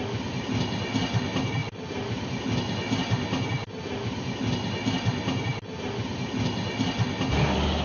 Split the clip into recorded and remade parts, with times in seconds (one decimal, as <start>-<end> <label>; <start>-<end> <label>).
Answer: 0.0-7.8 recorded